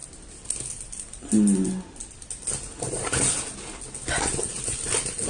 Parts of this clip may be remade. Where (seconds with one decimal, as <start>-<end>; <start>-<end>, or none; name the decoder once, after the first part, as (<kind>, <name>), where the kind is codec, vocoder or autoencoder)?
none